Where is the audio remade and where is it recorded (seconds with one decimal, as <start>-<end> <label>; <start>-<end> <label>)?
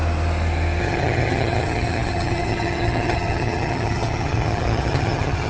0.0-0.8 recorded; 0.8-5.5 remade